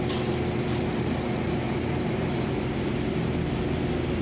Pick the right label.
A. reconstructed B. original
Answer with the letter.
B